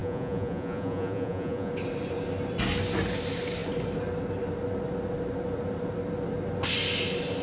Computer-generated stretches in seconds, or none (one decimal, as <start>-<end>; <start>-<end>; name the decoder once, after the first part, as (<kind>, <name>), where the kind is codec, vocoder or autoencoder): 0.0-1.7 (vocoder, Vocos)